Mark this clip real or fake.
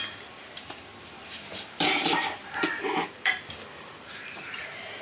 fake